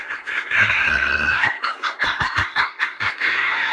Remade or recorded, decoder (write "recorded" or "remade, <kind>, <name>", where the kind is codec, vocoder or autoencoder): remade, codec, SNAC